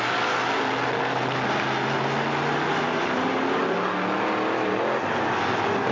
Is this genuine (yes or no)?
yes